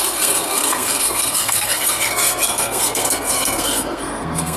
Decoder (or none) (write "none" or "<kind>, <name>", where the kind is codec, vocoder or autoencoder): codec, SNAC